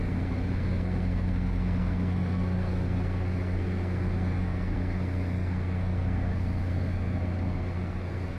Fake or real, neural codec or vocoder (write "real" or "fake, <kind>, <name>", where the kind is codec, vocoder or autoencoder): fake, codec, SNAC